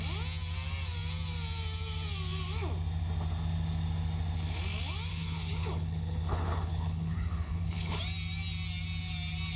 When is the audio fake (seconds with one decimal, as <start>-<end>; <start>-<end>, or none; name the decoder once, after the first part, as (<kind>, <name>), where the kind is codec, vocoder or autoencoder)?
5.1-8.0 (codec, HILCodec)

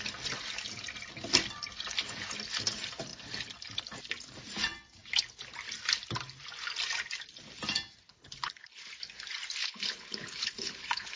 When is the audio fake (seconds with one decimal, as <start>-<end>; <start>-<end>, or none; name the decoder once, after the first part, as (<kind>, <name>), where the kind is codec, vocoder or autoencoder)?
8.1-8.8 (codec, HILCodec); 9.6-11.2

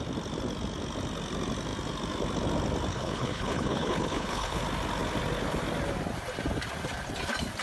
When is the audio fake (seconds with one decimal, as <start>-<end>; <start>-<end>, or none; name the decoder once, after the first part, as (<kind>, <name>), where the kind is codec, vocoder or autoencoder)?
2.9-4.6 (codec, HILCodec)

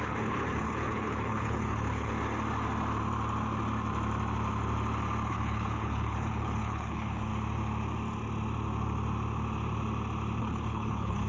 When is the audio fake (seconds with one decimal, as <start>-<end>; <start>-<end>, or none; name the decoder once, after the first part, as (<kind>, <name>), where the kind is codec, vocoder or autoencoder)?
0.0-2.1 (codec, HILCodec); 5.3-7.3; 10.4-11.3

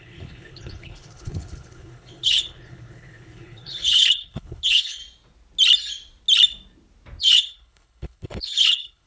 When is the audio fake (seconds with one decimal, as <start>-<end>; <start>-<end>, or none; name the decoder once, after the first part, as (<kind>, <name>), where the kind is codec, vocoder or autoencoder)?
0.0-5.0 (codec, HILCodec); 7.2-9.1

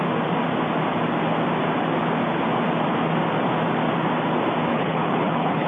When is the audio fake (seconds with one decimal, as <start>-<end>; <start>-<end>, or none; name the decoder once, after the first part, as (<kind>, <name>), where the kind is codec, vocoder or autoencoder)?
4.7-5.7 (codec, HILCodec)

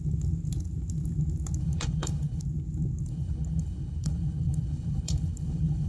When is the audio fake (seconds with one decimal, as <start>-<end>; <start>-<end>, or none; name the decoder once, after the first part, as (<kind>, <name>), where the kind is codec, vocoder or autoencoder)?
1.6-2.4 (codec, HILCodec); 3.1-5.9

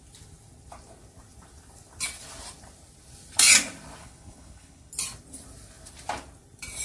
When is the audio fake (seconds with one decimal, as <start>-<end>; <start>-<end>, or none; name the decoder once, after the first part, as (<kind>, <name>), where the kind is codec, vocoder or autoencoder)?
4.0-4.9 (codec, HILCodec)